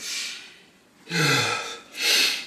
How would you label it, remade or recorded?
recorded